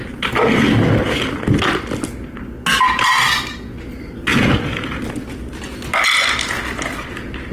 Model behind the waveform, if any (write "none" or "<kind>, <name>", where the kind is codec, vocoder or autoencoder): none